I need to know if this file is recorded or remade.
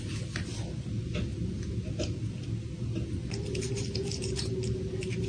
recorded